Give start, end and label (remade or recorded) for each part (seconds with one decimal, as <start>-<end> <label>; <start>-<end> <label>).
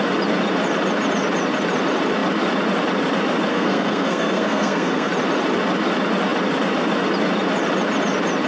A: 0.0-3.5 recorded; 3.5-5.1 remade; 5.1-8.5 recorded